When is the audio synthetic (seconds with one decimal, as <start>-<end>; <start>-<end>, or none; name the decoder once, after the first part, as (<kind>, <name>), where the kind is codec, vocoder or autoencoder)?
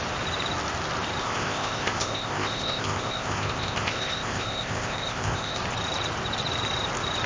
1.2-5.6 (codec, ZipCodec)